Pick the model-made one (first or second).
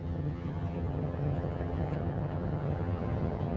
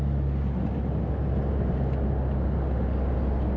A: first